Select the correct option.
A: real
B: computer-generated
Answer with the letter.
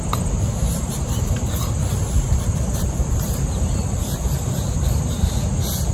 A